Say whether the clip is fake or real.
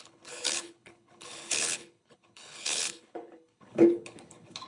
fake